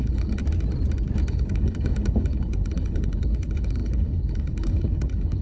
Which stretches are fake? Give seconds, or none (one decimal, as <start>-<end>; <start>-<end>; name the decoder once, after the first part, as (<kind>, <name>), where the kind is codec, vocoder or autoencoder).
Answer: 0.0-0.4 (codec, HILCodec); 1.3-5.4